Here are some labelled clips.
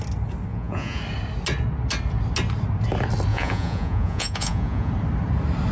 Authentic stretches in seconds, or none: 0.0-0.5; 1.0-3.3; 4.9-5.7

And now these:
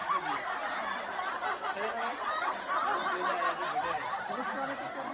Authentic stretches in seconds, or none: 0.0-5.1

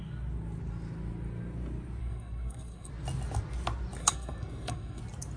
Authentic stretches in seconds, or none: 0.0-2.0; 2.9-4.0; 5.0-5.4

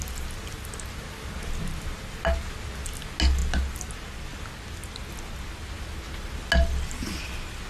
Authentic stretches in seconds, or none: 0.0-7.7

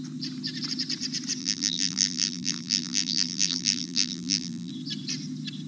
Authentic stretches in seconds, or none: 0.0-1.4; 4.7-5.7